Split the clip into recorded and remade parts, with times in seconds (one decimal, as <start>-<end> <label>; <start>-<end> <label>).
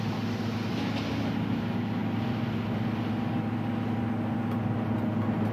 0.0-5.5 recorded